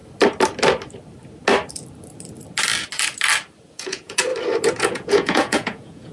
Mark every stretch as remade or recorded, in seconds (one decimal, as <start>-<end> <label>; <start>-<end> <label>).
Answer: 0.0-3.7 recorded; 3.7-4.3 remade; 4.3-4.8 recorded; 4.8-6.1 remade